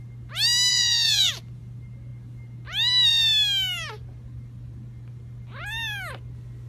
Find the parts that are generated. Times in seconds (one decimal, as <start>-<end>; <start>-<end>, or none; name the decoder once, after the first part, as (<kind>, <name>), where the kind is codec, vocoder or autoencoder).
0.7-1.3 (vocoder, Vocos)